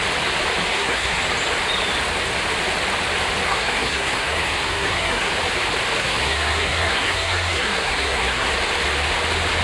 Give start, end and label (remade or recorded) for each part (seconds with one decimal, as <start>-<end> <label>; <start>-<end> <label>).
0.0-0.7 recorded; 0.7-1.2 remade; 1.2-3.5 recorded; 3.5-5.3 remade; 5.3-6.0 recorded; 6.0-8.5 remade; 8.5-9.6 recorded